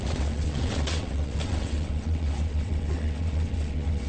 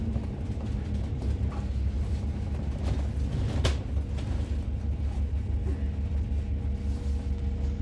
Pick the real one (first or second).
second